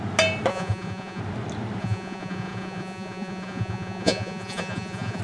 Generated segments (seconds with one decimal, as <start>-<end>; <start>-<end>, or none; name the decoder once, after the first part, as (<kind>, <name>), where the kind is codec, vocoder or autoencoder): 0.5-1.2 (vocoder, Vocos); 1.8-5.2